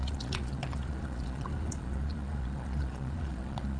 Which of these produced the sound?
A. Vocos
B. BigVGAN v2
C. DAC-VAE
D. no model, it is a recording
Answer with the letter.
A